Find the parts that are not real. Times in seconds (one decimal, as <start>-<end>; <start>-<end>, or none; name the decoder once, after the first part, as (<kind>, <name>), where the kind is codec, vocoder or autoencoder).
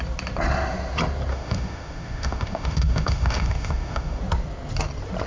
1.3-4.2 (autoencoder, DAC-VAE)